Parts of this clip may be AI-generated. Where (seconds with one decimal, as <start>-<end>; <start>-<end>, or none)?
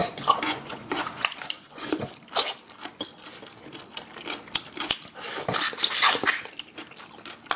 0.0-2.1